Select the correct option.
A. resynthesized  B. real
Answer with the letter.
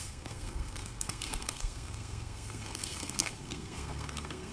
A